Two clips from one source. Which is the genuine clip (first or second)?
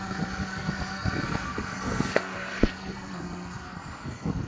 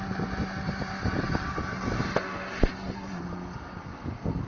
second